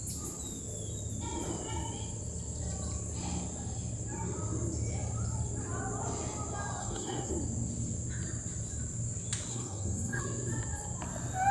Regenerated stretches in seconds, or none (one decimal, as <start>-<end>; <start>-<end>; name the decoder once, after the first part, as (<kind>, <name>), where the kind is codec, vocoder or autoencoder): 6.8-7.3 (codec, SNAC); 9.5-10.2